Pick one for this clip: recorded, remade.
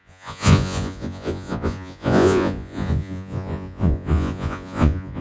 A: remade